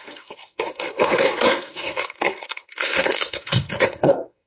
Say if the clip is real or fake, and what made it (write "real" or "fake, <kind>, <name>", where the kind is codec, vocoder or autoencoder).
fake, codec, SNAC